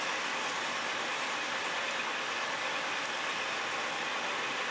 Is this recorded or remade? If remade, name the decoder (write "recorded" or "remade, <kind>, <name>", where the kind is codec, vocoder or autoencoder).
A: recorded